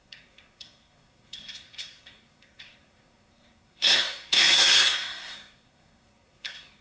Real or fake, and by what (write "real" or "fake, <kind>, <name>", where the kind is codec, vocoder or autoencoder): fake, codec, SNAC